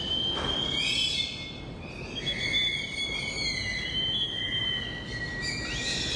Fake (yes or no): no